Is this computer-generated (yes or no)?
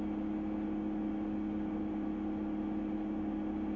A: no